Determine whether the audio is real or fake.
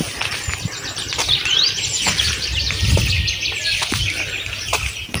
real